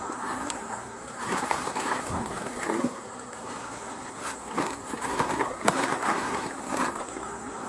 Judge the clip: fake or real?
fake